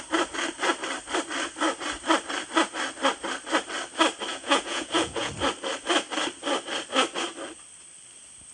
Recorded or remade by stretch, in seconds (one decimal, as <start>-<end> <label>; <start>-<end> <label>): 0.0-4.3 recorded; 4.3-5.3 remade; 5.3-8.5 recorded